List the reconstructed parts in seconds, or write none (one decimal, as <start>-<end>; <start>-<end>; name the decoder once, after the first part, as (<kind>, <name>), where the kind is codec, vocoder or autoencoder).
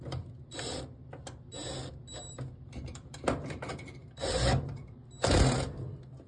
none